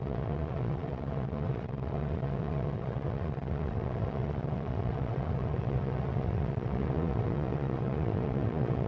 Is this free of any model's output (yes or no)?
no